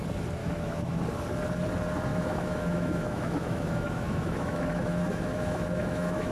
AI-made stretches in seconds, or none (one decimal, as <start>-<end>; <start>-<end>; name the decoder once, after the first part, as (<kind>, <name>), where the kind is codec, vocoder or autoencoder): 0.4-1.0 (autoencoder, DAC-VAE); 2.1-6.3